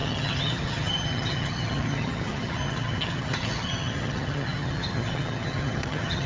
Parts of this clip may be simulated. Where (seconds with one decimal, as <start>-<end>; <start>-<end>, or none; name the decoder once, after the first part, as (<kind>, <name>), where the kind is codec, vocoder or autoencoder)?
0.0-6.3 (vocoder, HiFi-GAN)